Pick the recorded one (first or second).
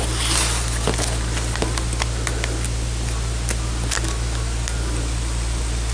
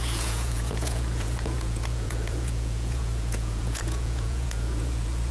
first